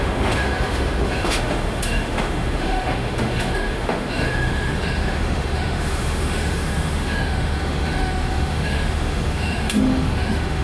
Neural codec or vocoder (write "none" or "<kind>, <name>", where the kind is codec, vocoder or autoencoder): autoencoder, DAC-VAE